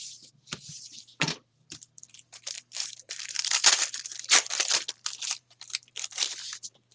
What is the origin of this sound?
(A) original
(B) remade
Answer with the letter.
B